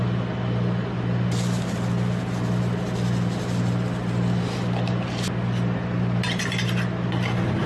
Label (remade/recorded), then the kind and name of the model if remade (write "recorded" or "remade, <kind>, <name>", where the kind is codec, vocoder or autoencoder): recorded